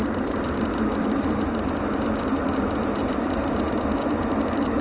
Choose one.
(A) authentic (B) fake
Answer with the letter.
B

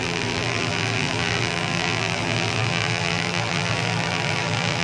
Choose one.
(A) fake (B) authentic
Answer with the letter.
A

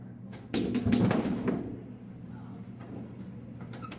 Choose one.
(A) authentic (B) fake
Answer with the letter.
A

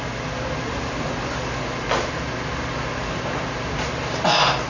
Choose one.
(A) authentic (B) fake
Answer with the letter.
A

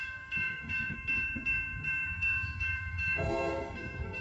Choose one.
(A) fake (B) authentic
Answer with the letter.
A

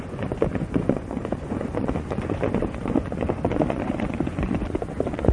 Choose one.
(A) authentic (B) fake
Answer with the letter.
B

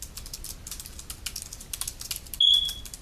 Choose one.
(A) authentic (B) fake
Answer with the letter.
A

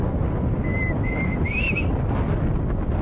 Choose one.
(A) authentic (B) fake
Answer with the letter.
A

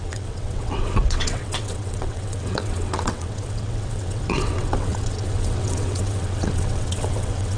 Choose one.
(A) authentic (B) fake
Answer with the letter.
B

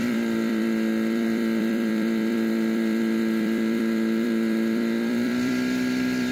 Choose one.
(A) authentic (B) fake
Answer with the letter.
B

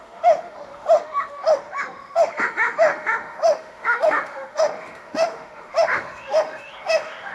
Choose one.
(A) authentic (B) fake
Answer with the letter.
B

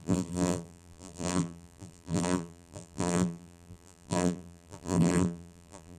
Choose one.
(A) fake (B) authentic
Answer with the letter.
A